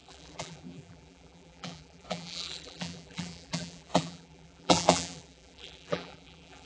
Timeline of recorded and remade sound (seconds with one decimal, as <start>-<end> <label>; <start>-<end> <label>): 0.0-6.7 remade